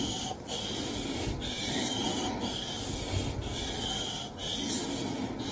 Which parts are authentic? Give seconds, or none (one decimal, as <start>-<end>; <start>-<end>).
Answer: 0.0-5.5